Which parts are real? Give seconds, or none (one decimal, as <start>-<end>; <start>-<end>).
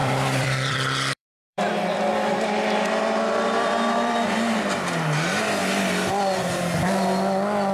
4.6-7.7